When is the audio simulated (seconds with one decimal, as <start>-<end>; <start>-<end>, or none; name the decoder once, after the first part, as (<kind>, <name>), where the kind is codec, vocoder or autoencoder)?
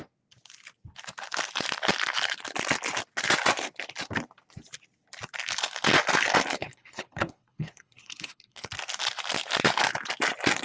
6.5-8.7 (codec, HILCodec)